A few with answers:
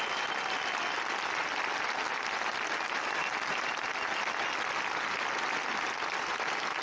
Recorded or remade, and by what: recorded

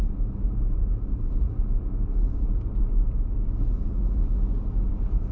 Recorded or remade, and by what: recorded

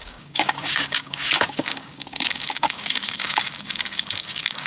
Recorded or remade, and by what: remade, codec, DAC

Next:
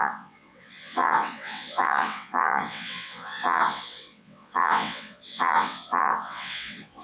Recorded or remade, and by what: remade, vocoder, WaveNeXt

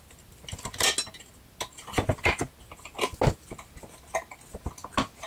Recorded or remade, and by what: recorded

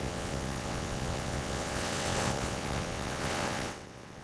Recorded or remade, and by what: remade, vocoder, WaveNeXt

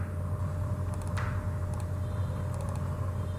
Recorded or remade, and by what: recorded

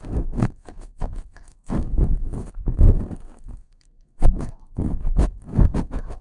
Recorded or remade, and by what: remade, codec, SNAC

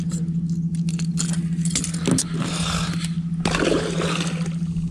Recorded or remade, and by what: recorded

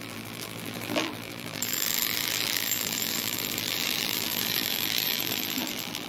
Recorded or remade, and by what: remade, vocoder, BigVGAN v2